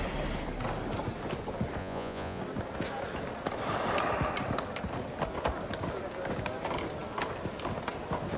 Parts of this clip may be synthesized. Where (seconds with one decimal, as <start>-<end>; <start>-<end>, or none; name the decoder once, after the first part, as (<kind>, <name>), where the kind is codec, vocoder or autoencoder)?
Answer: 1.8-2.4 (vocoder, Vocos)